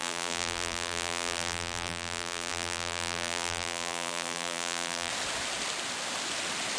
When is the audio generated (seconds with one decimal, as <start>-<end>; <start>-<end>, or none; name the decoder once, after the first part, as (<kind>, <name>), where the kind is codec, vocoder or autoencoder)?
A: 0.0-5.1 (vocoder, BigVGAN v2)